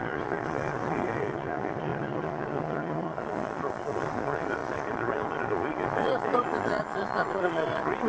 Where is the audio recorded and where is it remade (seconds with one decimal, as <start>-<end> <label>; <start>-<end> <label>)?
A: 0.0-8.1 remade